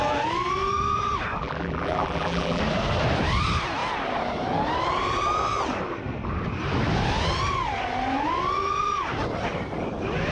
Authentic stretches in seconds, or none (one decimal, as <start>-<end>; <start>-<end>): 0.0-1.4; 2.6-10.3